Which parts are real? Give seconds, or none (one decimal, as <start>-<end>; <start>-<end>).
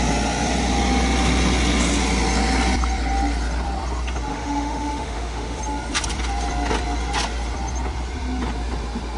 0.0-4.3; 5.6-9.2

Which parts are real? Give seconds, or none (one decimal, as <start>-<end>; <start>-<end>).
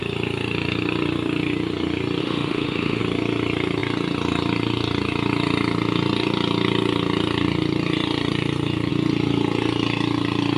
0.0-2.2; 3.0-10.6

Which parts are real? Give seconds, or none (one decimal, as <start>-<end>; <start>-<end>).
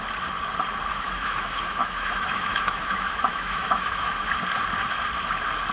0.0-0.9; 4.3-5.7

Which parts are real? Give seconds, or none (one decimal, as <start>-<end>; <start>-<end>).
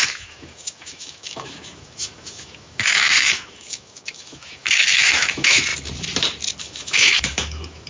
5.7-6.6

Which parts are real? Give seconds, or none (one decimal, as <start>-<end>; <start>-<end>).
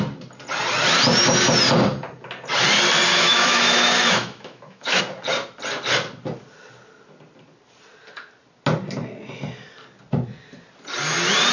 0.0-3.1; 5.0-11.5